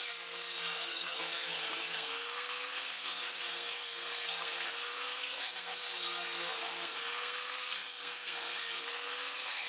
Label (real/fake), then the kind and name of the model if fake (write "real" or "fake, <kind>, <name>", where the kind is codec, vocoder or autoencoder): fake, codec, SNAC